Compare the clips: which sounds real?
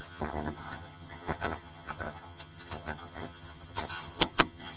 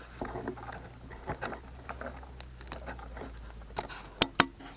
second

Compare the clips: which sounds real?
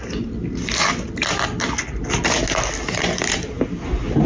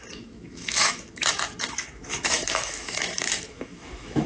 first